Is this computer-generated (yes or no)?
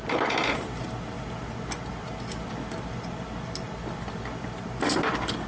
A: no